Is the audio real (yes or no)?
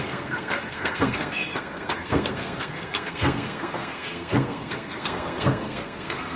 no